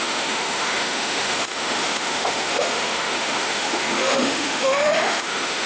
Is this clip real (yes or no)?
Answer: no